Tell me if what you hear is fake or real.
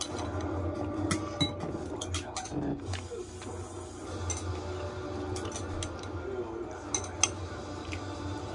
real